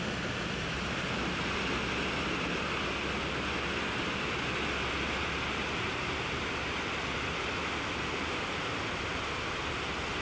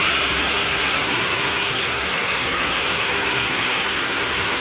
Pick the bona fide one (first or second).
first